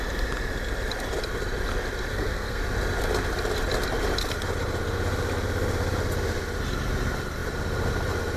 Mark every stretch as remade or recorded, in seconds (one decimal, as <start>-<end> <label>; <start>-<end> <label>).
0.0-2.1 recorded; 2.1-2.6 remade; 2.6-8.4 recorded